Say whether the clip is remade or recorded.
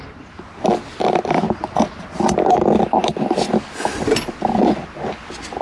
recorded